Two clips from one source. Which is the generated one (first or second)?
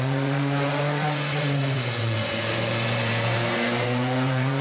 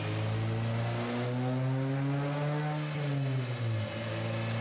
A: first